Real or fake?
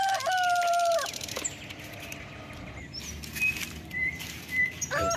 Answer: real